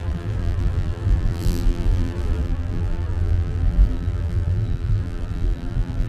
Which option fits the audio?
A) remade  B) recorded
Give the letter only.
A